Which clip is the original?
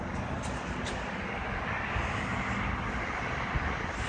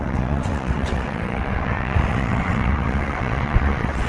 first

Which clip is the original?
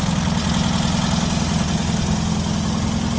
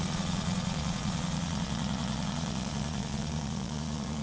first